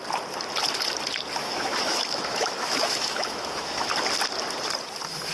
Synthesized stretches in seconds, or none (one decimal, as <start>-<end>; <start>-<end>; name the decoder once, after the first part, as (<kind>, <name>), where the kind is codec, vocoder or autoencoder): 1.4-3.9 (autoencoder, DAC-VAE)